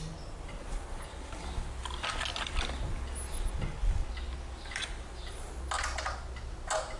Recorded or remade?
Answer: recorded